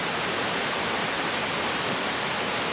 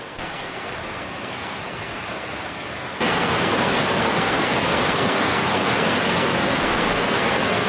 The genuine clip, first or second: first